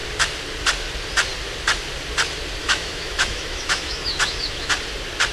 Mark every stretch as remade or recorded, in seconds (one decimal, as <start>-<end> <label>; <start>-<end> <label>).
0.0-2.6 recorded; 2.6-4.7 remade; 4.7-5.3 recorded

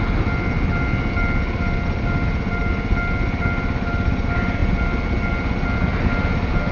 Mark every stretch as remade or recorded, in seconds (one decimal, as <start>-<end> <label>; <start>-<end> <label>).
0.0-6.7 recorded